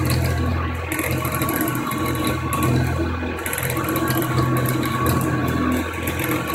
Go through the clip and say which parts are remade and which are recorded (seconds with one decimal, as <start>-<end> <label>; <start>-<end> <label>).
0.0-6.5 recorded